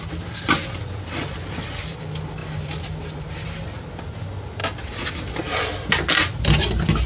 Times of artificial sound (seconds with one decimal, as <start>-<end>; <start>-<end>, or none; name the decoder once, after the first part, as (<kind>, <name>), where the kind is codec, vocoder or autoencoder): none